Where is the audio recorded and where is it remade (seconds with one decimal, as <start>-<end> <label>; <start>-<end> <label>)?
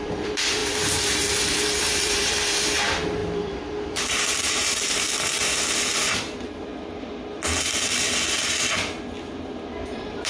0.0-6.7 remade; 6.7-9.3 recorded; 9.3-10.3 remade